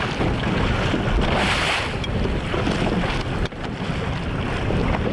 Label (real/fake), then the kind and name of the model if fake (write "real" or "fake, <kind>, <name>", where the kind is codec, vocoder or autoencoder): real